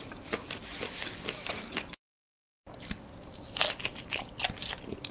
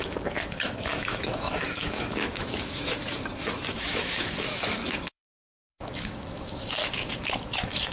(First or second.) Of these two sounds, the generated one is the second